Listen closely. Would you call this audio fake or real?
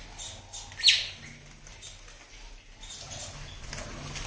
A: real